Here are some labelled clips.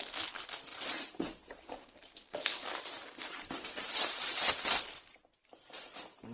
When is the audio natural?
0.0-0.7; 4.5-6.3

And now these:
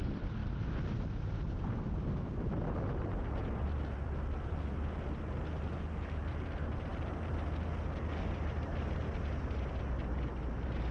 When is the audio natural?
0.0-10.9

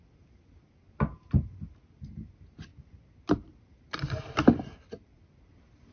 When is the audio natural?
0.0-5.9

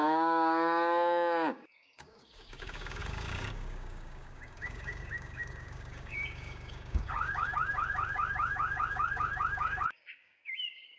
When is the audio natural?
none

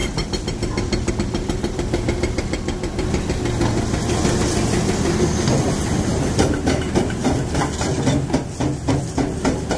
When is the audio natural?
0.0-9.8